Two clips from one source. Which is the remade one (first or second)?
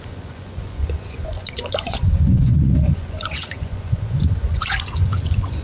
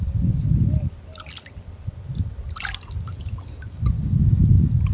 first